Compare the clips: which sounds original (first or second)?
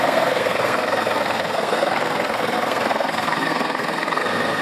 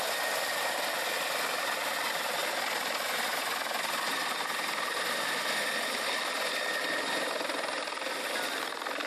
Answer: second